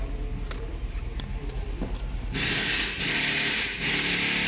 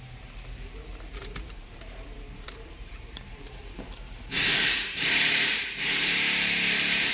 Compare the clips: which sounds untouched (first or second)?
first